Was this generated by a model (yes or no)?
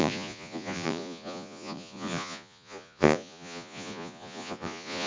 yes